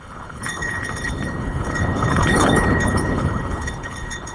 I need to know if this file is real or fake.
fake